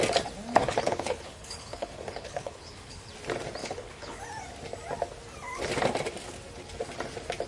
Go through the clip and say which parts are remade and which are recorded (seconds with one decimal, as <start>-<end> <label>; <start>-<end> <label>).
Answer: 0.0-0.6 recorded; 0.6-3.1 remade; 3.1-3.6 recorded; 3.6-4.2 remade; 4.2-7.5 recorded